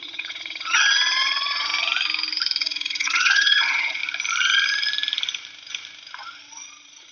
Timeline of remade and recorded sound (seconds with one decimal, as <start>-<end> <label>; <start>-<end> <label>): 0.0-1.7 remade; 1.7-2.6 recorded; 2.6-4.0 remade; 4.0-6.4 recorded; 6.4-7.1 remade